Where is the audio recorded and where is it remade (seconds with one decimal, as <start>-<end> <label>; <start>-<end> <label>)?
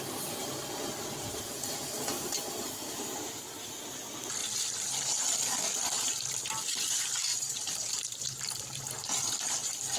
0.0-0.4 recorded; 0.4-3.4 remade; 3.4-7.3 recorded; 7.3-8.8 remade; 8.8-10.0 recorded